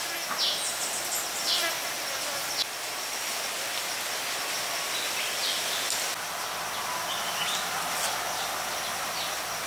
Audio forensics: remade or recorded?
recorded